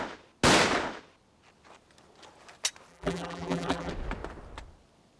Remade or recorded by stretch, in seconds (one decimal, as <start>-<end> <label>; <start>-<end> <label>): 0.0-2.9 recorded; 2.9-3.9 remade; 3.9-5.2 recorded

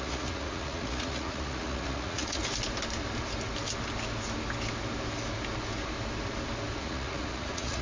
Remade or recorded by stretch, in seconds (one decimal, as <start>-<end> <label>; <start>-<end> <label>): 0.0-2.4 remade; 2.4-6.8 recorded; 6.8-7.8 remade

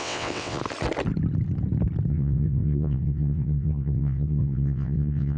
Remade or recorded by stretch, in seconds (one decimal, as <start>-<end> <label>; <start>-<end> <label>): 0.0-0.6 remade; 0.6-2.1 recorded; 2.1-5.4 remade

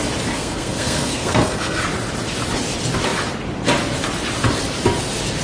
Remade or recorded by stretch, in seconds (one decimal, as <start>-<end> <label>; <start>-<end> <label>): 0.0-0.4 recorded; 0.4-1.8 remade; 1.8-5.4 recorded